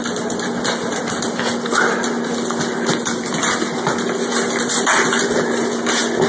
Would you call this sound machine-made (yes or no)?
no